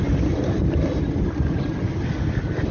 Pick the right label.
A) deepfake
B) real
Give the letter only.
B